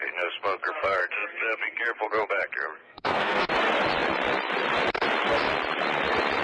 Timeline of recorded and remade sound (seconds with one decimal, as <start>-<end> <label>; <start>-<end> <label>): 0.0-2.8 recorded; 2.8-3.5 remade; 3.5-6.4 recorded